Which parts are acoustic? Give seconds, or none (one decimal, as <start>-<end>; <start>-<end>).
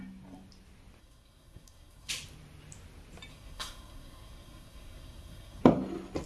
0.0-1.0; 2.1-3.3; 5.6-6.3